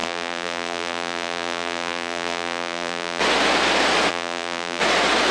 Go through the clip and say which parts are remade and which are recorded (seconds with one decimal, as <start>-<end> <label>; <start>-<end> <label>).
0.0-3.2 remade; 3.2-4.1 recorded; 4.1-4.8 remade; 4.8-5.3 recorded